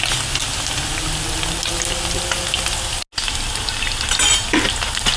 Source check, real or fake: real